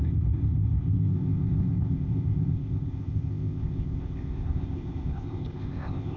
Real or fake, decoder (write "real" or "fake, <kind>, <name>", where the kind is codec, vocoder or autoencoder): fake, codec, ZipCodec